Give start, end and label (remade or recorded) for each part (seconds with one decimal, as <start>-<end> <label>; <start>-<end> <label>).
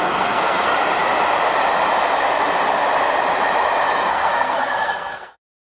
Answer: 0.0-0.7 remade; 0.7-4.1 recorded; 4.1-5.6 remade